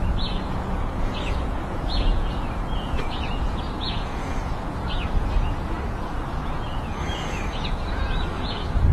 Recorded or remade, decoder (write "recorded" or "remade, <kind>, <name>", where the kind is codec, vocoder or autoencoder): remade, vocoder, Vocos